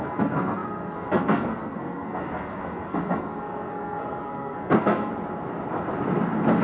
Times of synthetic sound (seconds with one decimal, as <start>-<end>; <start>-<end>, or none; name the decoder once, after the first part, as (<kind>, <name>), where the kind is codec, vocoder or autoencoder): 0.0-5.1 (codec, SNAC)